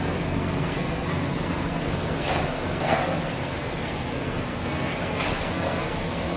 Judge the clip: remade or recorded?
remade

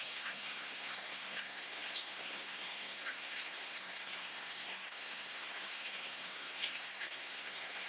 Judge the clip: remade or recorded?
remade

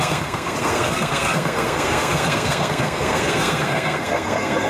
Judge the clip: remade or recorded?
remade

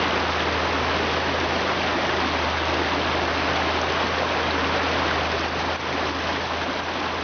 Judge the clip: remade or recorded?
recorded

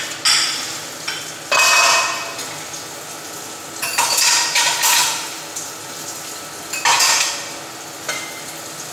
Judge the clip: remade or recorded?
recorded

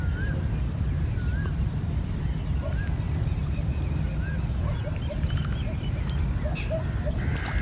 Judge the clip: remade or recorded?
recorded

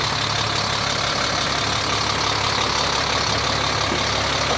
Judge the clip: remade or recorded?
recorded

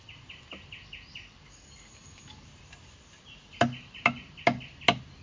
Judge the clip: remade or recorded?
recorded